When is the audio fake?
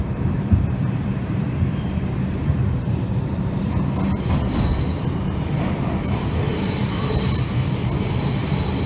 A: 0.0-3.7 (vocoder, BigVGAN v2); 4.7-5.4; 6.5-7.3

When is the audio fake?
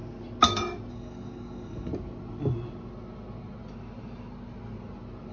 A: 0.9-1.9 (codec, DAC)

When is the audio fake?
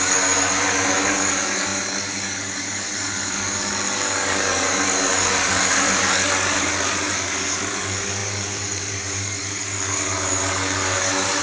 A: 0.0-11.4 (codec, DAC)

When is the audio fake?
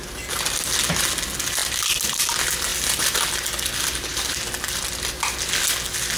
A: 1.6-2.3 (vocoder, BigVGAN v2)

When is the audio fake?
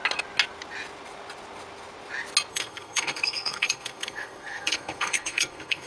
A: 2.5-5.9 (codec, SNAC)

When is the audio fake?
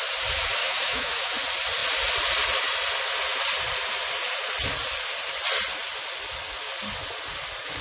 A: 0.6-1.3 (autoencoder, DAC-VAE)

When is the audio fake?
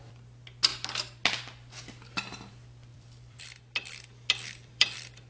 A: 2.9-3.6 (vocoder, BigVGAN v2); 4.6-5.3